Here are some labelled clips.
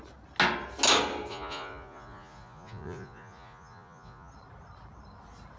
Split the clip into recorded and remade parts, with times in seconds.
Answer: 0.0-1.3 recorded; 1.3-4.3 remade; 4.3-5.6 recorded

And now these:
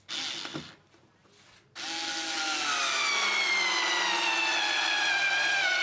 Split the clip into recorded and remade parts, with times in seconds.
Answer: 0.0-5.8 recorded

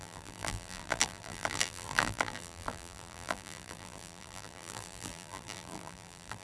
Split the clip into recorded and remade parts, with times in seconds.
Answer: 0.0-6.4 remade

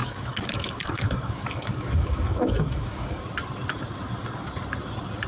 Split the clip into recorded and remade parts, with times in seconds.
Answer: 0.0-3.2 remade; 3.2-5.3 recorded